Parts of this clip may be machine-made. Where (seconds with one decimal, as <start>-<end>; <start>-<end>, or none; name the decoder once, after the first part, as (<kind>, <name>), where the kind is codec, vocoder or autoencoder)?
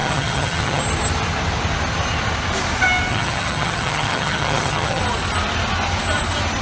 0.0-0.8 (vocoder, HiFi-GAN); 3.1-5.0